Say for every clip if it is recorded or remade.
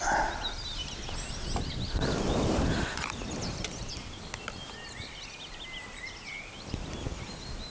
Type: recorded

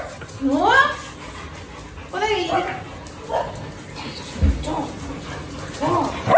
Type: recorded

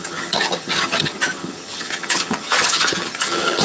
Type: remade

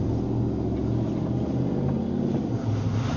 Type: recorded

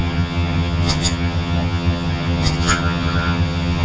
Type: remade